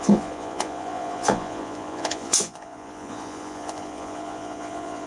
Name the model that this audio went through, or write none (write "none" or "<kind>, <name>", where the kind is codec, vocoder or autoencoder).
vocoder, Vocos